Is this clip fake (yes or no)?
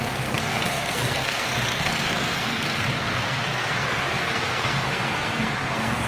yes